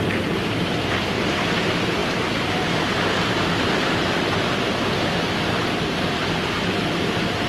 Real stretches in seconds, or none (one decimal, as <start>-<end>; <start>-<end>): 0.0-2.0; 5.4-7.5